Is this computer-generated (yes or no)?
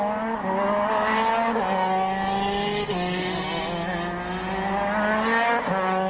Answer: no